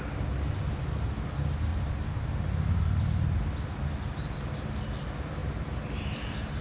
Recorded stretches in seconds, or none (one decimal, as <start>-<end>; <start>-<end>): 0.0-1.7; 3.0-5.4